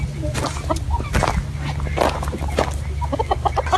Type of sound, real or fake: real